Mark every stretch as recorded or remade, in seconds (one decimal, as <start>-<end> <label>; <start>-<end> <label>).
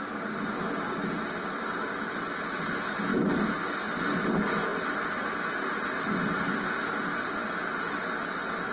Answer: 0.0-3.1 recorded; 3.1-3.9 remade; 3.9-8.7 recorded